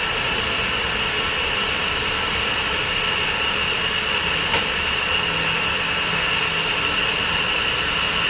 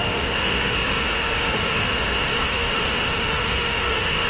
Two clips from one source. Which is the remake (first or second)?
second